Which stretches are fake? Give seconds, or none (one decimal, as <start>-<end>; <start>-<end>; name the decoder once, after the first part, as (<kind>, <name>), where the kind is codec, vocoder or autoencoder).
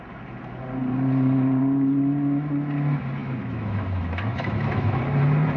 3.2-5.0 (autoencoder, DAC-VAE)